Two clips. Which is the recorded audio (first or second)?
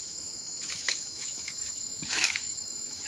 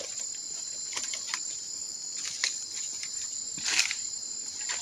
second